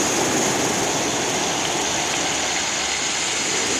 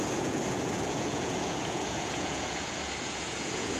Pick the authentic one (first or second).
first